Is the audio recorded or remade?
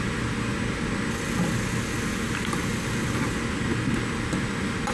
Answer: recorded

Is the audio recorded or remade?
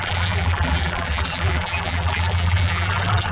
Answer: remade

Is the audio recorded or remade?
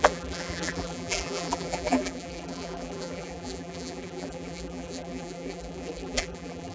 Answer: remade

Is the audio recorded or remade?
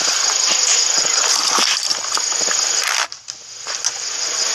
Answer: remade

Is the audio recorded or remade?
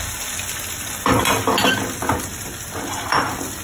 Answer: recorded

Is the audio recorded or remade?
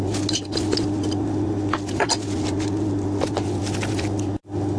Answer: recorded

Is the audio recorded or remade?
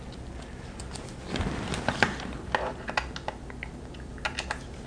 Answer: recorded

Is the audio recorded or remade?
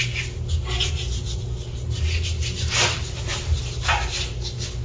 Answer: recorded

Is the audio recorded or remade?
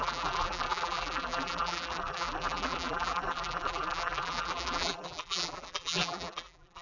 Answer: remade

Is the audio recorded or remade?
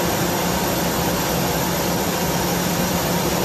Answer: recorded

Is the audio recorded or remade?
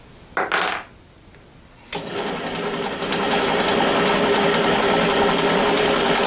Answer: recorded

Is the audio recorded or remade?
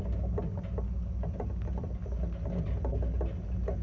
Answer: recorded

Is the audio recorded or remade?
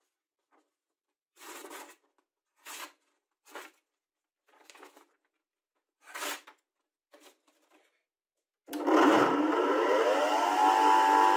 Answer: recorded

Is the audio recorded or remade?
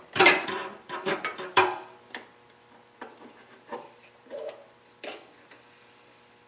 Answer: remade